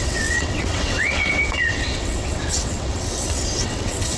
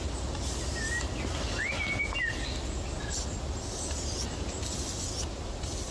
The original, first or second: second